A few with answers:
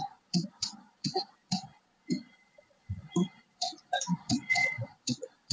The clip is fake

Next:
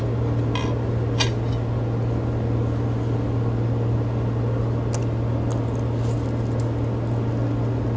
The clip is real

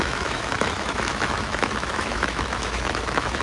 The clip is fake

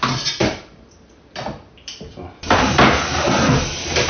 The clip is real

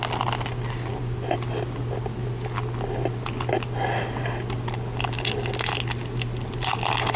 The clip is real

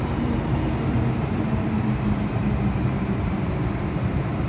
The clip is fake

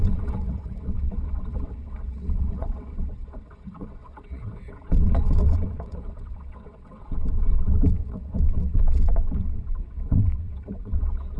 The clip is fake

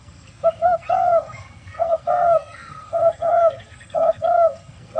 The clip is fake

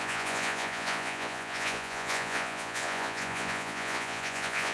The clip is fake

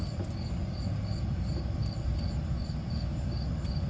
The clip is real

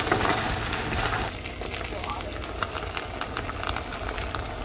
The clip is real